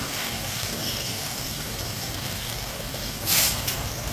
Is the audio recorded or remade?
remade